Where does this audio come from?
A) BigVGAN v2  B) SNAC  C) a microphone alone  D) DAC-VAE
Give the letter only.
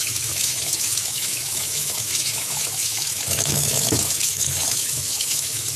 D